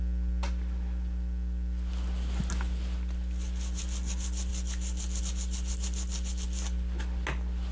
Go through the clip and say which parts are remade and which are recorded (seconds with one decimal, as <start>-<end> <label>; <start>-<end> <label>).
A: 0.0-7.7 recorded